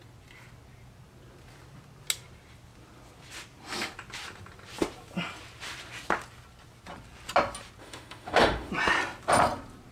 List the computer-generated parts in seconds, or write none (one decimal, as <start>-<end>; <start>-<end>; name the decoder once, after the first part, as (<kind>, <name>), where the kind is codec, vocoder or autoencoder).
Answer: 7.8-8.7 (autoencoder, DAC-VAE)

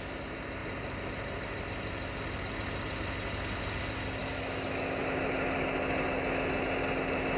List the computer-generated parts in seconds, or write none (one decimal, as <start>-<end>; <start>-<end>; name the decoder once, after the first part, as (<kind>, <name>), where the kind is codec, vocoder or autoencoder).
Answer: 4.2-5.0 (autoencoder, DAC-VAE)

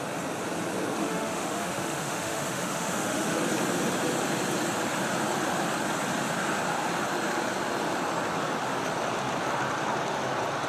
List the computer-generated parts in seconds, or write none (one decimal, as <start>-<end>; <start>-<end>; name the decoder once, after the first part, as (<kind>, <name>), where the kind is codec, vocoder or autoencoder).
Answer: 1.0-3.4 (autoencoder, DAC-VAE)

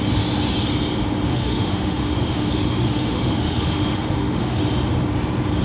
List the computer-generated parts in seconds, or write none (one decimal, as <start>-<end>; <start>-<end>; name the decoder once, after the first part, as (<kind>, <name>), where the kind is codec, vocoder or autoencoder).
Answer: 1.3-4.6 (autoencoder, DAC-VAE)

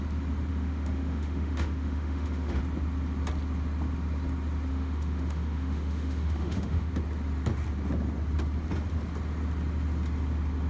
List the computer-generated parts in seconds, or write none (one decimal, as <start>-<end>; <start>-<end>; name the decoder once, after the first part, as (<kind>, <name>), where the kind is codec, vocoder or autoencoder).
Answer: 0.5-2.6 (autoencoder, DAC-VAE); 4.7-6.9

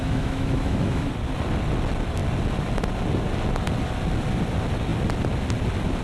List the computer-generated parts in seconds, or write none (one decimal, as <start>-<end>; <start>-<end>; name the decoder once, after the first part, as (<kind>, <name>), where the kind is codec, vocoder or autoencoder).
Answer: 0.0-1.1 (autoencoder, DAC-VAE)

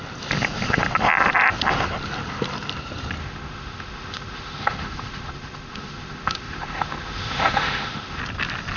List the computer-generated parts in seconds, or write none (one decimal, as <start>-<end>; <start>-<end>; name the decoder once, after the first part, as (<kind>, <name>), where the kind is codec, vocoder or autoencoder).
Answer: 3.2-8.2 (autoencoder, DAC-VAE)

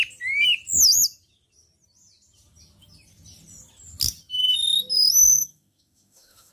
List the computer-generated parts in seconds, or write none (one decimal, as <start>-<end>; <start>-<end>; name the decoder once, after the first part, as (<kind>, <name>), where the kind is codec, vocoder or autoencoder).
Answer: 5.3-6.5 (autoencoder, DAC-VAE)